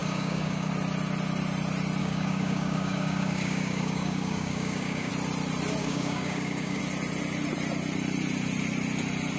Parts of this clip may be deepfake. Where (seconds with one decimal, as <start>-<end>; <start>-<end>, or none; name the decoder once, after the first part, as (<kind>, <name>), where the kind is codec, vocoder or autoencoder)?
0.0-0.7 (codec, DAC); 2.0-5.1; 5.8-6.8